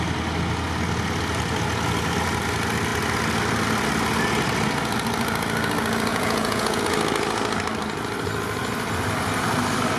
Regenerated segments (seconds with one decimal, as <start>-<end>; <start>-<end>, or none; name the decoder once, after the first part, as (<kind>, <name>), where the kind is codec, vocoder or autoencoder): 6.1-6.8 (vocoder, Vocos)